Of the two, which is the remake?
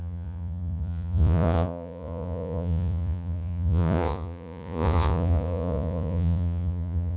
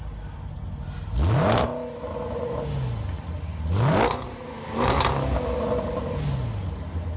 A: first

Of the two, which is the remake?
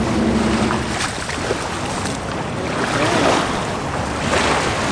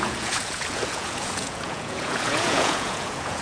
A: second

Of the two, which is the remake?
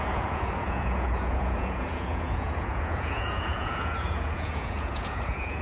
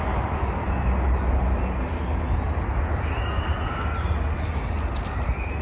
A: first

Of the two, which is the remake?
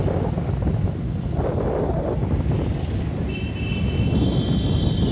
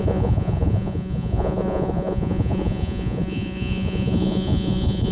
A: second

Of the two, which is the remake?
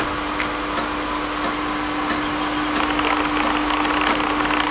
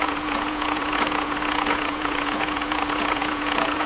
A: second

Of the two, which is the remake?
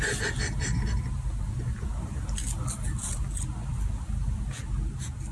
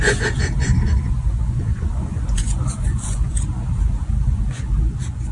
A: second